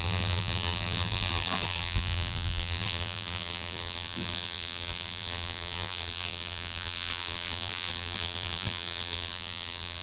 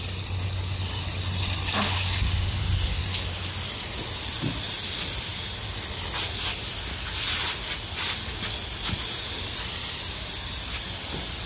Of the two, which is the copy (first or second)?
first